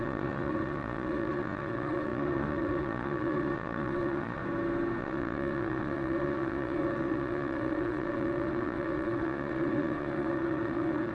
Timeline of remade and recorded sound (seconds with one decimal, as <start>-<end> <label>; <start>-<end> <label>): 0.0-4.4 remade; 4.4-5.0 recorded; 5.0-11.1 remade